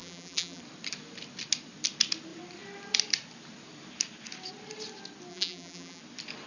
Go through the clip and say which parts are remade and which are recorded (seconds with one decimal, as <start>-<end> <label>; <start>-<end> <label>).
0.0-0.6 remade; 0.6-5.3 recorded; 5.3-6.0 remade; 6.0-6.5 recorded